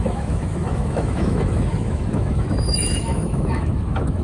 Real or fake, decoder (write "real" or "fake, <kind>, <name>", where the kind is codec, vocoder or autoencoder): fake, autoencoder, DAC-VAE